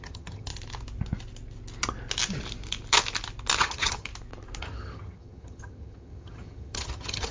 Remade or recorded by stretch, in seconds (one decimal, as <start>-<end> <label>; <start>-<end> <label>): 0.0-0.5 remade; 0.5-3.6 recorded; 3.6-4.1 remade; 4.1-4.6 recorded; 4.6-7.3 remade